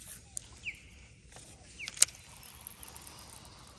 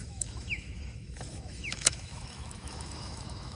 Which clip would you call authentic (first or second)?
first